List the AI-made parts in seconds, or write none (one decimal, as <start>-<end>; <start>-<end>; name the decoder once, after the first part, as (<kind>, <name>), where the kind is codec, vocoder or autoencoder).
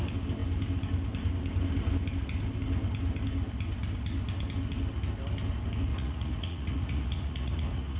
5.9-8.0 (vocoder, Vocos)